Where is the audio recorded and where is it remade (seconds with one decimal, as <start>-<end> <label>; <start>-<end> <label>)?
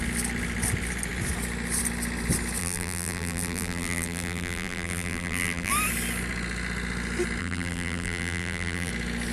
0.0-2.6 recorded; 2.6-5.7 remade; 5.7-7.4 recorded; 7.4-8.9 remade; 8.9-9.3 recorded